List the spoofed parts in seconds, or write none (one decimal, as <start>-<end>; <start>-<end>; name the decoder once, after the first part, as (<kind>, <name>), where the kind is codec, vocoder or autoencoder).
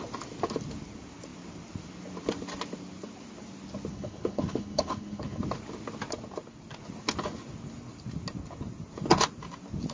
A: 3.9-5.4 (codec, HILCodec)